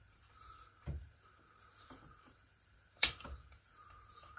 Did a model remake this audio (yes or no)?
yes